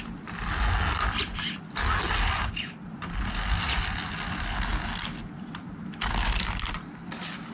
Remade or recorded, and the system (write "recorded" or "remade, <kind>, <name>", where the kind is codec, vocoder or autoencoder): recorded